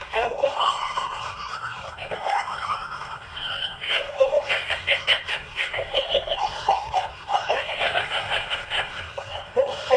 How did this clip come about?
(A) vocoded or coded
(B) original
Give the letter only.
A